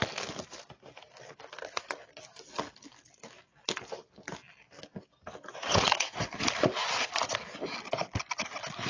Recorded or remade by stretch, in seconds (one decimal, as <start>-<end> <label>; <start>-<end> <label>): 0.0-5.5 recorded; 5.5-6.2 remade; 6.2-8.9 recorded